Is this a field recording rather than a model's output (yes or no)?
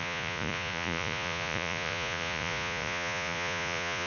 no